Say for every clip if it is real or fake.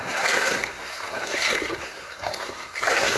fake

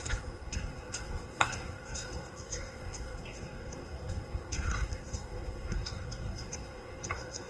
fake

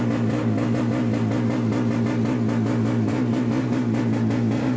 real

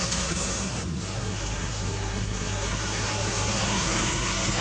fake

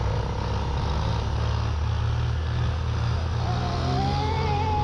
real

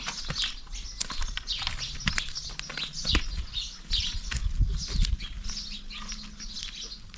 real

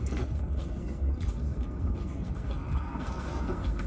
fake